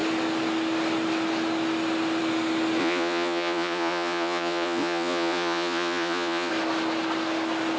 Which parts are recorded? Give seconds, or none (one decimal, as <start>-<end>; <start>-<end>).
0.0-2.8; 6.5-7.8